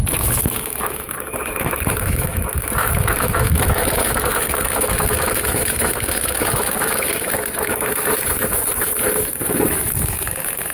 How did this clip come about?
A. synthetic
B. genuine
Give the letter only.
A